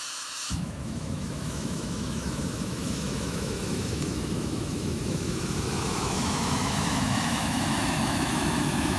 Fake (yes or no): yes